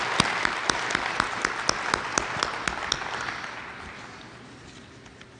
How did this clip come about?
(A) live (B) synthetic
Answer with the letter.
A